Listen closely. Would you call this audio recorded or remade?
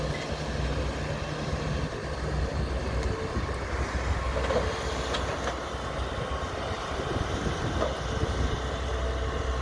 recorded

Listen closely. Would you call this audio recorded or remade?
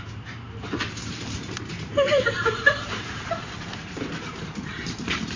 remade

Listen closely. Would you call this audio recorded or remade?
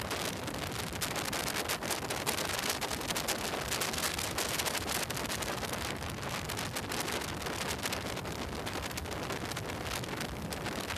recorded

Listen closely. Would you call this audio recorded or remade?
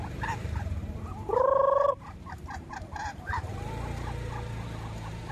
remade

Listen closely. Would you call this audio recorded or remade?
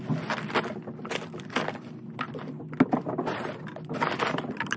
recorded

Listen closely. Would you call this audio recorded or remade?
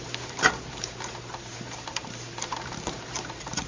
remade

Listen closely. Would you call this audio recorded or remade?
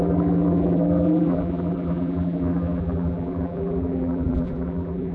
remade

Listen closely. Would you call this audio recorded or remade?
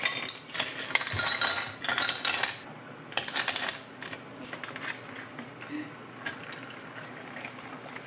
recorded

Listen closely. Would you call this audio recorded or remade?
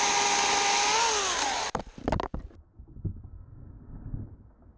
recorded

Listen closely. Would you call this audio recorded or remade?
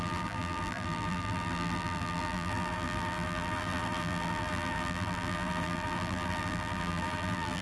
remade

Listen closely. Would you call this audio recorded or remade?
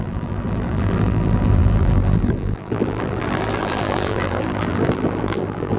remade